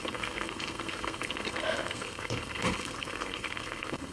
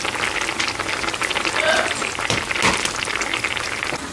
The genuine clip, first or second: second